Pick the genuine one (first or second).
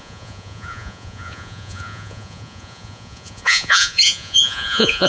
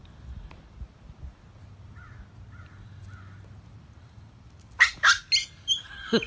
second